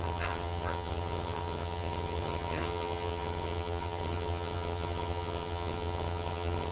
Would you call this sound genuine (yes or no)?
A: no